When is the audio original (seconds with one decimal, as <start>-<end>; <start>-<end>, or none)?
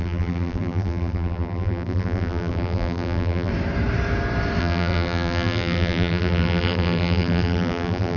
3.5-4.6